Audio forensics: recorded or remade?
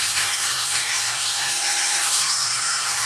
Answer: remade